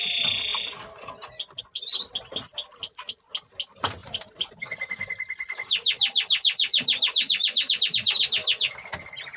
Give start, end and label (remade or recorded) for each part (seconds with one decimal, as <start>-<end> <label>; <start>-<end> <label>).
0.0-9.4 recorded